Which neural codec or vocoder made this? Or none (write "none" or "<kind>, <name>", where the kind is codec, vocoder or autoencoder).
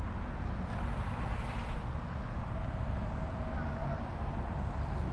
none